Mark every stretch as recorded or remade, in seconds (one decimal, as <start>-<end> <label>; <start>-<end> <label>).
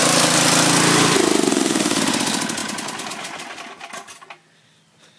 0.0-1.5 recorded; 1.5-2.0 remade; 2.0-5.2 recorded